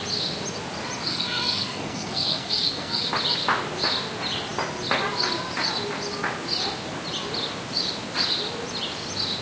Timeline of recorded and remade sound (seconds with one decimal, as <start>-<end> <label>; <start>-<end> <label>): 0.0-1.1 recorded; 1.1-3.1 remade; 3.1-9.4 recorded